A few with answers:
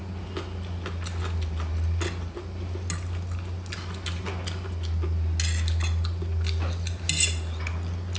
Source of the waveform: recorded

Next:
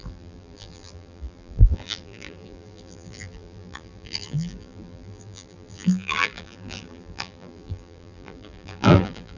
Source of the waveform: remade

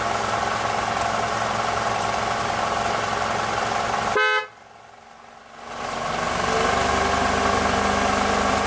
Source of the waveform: recorded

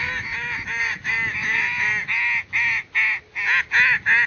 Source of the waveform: recorded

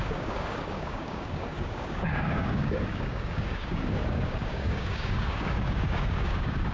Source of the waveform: remade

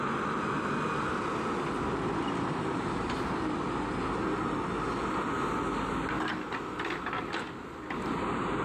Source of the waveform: recorded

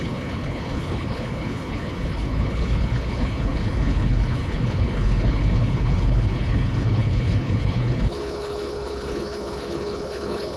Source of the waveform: remade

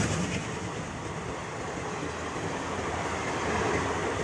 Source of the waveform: recorded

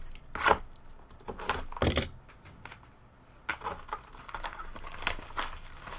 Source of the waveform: recorded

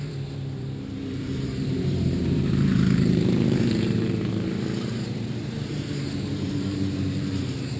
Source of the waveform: remade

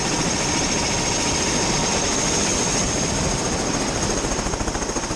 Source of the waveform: recorded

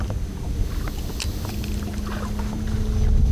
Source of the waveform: recorded